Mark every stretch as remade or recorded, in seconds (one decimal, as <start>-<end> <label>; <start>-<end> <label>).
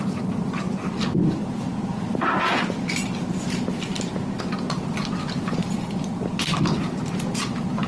0.0-7.9 recorded